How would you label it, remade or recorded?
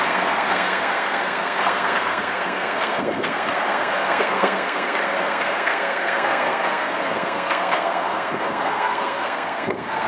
remade